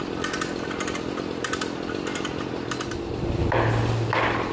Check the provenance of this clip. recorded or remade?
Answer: recorded